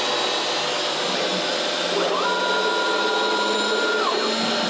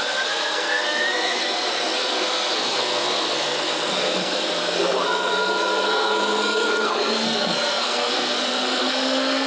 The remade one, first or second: second